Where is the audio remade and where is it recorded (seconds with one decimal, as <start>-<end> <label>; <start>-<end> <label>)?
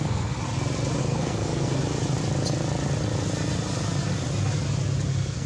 0.0-0.4 remade; 0.4-1.0 recorded; 1.0-1.8 remade; 1.8-5.1 recorded; 5.1-5.5 remade